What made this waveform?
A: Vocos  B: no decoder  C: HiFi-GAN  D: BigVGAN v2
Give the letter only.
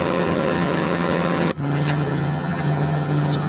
C